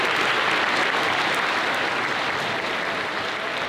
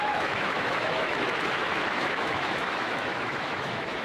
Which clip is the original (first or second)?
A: first